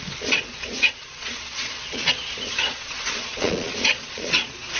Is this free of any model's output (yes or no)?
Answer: no